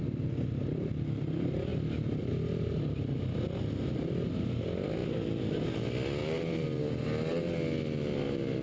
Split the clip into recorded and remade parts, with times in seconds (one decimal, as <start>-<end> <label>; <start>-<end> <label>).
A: 0.0-1.7 recorded; 1.7-2.3 remade; 2.3-5.0 recorded; 5.0-5.6 remade; 5.6-6.2 recorded; 6.2-6.8 remade; 6.8-8.6 recorded